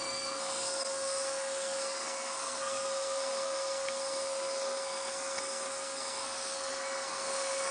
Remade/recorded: remade